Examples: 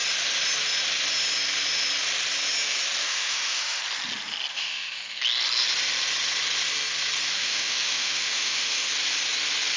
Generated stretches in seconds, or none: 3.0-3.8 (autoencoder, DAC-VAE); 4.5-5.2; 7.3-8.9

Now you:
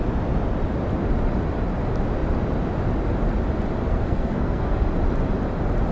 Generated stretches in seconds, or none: 3.8-4.8 (codec, SNAC)